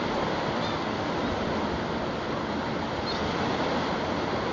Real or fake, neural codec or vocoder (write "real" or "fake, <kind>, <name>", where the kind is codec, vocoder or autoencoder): real